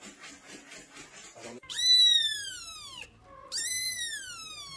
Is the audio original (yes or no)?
yes